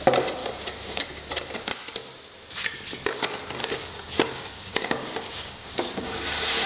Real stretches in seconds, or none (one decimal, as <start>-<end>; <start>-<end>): 0.0-0.4; 1.3-3.6